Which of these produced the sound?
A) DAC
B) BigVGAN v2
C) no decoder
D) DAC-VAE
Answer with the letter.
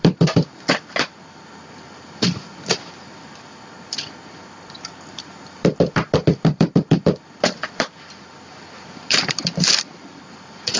B